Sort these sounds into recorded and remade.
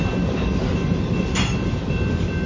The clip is recorded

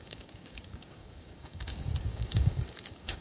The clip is remade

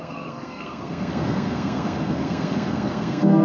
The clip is remade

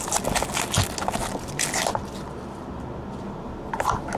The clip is recorded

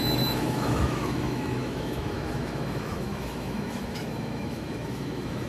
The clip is remade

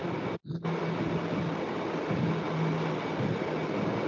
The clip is recorded